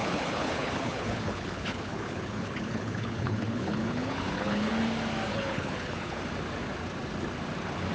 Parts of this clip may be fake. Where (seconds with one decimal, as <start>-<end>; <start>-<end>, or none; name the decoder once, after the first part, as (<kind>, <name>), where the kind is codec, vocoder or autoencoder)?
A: 0.0-4.7 (codec, HILCodec); 5.3-6.2